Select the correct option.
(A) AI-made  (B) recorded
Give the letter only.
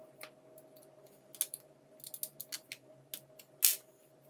B